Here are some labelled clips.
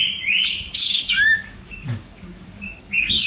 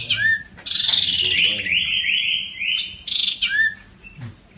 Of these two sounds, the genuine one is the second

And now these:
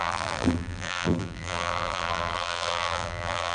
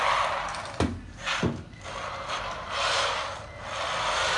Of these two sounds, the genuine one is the second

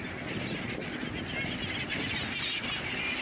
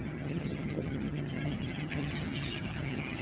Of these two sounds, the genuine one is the first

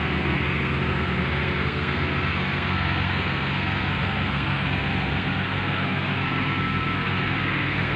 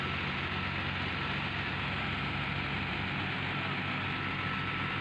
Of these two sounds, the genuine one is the second